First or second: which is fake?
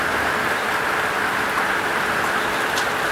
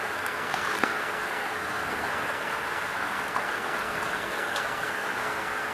second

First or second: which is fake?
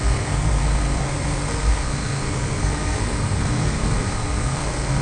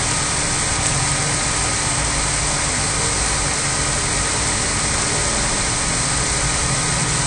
first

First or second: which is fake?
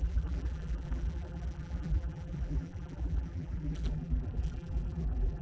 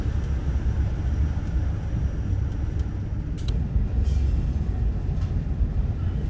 first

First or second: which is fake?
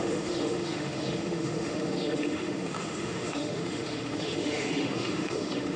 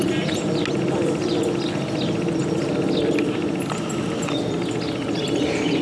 first